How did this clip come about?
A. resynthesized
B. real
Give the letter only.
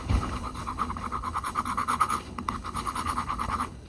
A